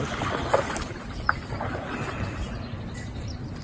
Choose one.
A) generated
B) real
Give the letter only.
B